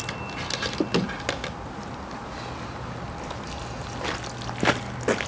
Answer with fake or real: real